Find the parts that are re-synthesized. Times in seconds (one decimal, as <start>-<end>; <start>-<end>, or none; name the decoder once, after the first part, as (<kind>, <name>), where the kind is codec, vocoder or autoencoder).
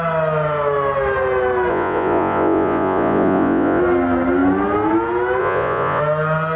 1.7-3.8 (vocoder, Vocos); 5.4-6.0